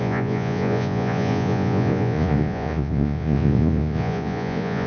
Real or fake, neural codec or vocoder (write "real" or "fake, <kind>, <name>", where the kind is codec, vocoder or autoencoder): fake, vocoder, Vocos